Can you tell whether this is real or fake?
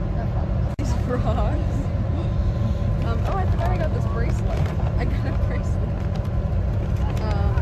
real